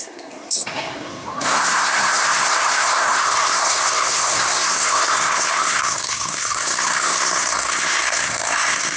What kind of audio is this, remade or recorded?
remade